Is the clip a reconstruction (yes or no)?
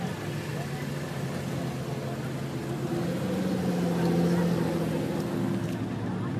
no